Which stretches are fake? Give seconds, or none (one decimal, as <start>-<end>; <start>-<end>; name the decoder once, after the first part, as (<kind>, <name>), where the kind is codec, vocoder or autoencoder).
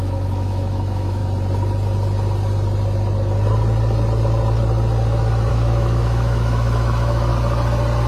0.0-1.2 (autoencoder, DAC-VAE); 5.5-7.3